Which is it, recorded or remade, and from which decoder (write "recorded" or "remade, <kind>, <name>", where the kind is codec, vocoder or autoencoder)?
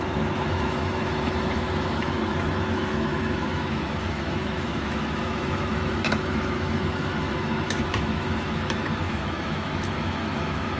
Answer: remade, autoencoder, DAC-VAE